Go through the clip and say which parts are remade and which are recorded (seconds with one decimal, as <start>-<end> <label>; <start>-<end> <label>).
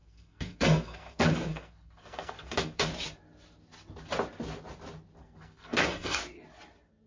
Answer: 0.0-2.9 remade; 2.9-5.2 recorded; 5.2-6.2 remade; 6.2-7.1 recorded